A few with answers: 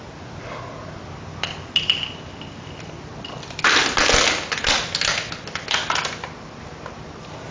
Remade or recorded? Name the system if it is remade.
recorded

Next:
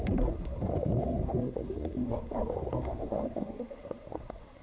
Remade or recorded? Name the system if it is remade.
remade, codec, SNAC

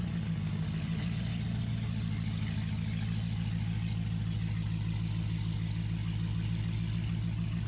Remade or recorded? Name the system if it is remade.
recorded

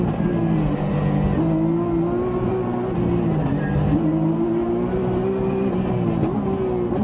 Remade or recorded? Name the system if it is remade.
recorded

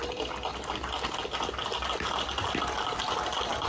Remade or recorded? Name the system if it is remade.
recorded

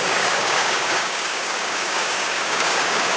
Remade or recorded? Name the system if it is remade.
remade, codec, DAC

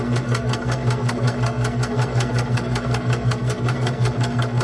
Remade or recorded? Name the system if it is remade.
remade, codec, SNAC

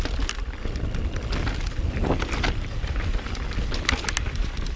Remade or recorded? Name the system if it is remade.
recorded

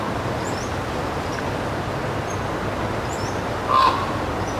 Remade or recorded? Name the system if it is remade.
recorded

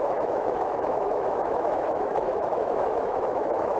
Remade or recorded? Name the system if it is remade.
remade, autoencoder, DAC-VAE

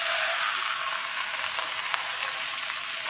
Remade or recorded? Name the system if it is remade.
recorded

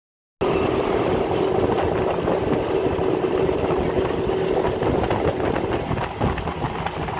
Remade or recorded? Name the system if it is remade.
recorded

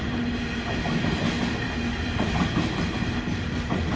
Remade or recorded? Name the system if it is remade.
recorded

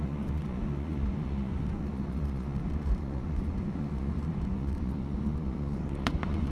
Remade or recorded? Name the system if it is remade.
remade, vocoder, Vocos